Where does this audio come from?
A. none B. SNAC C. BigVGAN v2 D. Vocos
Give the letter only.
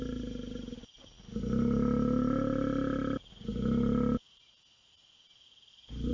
A